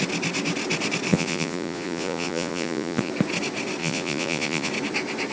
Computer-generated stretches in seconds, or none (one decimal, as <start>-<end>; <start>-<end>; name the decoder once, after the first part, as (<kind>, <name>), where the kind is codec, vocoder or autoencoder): 1.1-3.1 (vocoder, Vocos); 3.8-4.7